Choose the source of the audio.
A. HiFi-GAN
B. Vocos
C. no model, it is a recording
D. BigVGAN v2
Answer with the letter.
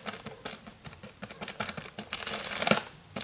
D